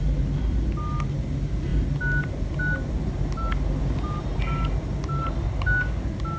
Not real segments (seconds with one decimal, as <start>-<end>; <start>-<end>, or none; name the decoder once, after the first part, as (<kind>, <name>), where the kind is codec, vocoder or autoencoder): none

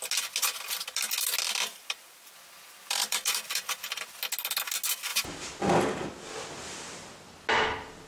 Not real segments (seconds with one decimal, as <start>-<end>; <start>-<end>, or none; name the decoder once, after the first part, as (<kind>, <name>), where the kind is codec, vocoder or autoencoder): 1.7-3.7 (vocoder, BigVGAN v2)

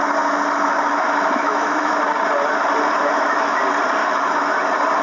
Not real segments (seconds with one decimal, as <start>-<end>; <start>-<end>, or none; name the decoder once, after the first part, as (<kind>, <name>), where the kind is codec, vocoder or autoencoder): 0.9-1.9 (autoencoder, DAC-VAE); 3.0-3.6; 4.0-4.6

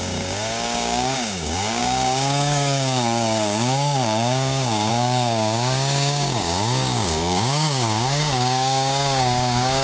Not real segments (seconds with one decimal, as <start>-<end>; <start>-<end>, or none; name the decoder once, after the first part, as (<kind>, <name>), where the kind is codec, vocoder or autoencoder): 0.0-9.8 (codec, DAC)